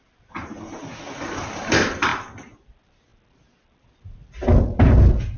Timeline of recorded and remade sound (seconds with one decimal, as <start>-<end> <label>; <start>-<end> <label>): 0.0-2.1 recorded; 2.1-2.7 remade; 2.7-5.4 recorded